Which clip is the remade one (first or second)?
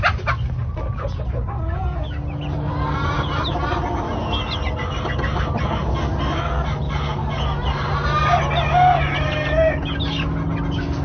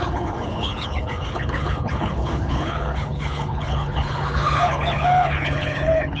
second